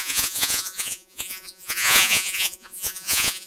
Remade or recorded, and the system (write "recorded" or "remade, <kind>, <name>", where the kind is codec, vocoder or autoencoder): remade, vocoder, Vocos